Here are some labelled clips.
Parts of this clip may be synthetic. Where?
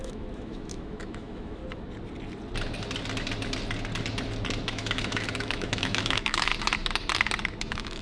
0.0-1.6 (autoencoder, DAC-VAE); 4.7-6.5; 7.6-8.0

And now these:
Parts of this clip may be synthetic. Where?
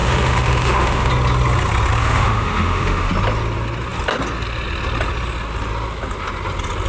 0.0-1.1 (autoencoder, DAC-VAE); 2.0-3.1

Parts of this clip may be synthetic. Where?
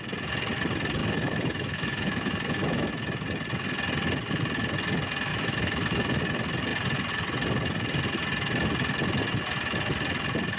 1.0-2.9 (autoencoder, DAC-VAE); 5.3-6.2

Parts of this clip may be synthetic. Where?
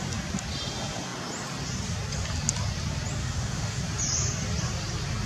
3.2-3.8 (autoencoder, DAC-VAE)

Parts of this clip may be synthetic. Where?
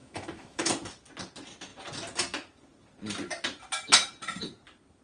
0.0-0.7 (autoencoder, DAC-VAE)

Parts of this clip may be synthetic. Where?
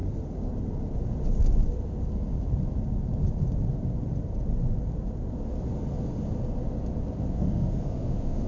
7.3-8.5 (autoencoder, DAC-VAE)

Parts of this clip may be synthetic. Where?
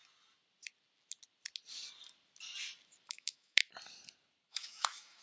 3.1-3.6 (autoencoder, DAC-VAE); 4.5-5.2